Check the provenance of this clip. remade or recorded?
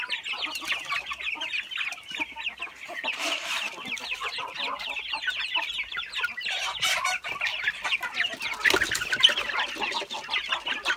remade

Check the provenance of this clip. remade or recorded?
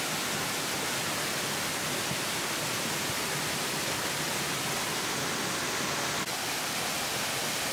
recorded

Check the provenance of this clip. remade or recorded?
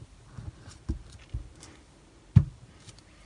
recorded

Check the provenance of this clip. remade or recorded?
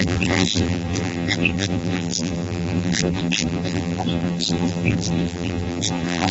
remade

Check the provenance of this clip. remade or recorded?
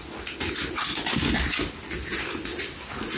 recorded